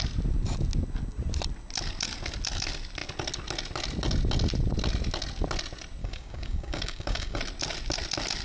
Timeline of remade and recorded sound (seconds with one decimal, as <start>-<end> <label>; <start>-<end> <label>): 0.0-6.0 recorded; 6.0-7.4 remade; 7.4-8.4 recorded